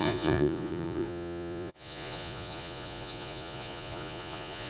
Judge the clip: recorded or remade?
remade